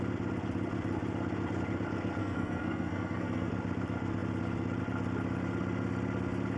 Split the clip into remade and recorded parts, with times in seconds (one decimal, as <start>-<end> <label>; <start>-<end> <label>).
0.0-2.2 recorded; 2.2-3.5 remade; 3.5-6.6 recorded